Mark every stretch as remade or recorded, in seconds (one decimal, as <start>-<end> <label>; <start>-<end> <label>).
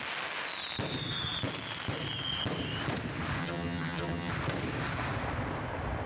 0.0-3.4 recorded; 3.4-4.3 remade; 4.3-6.1 recorded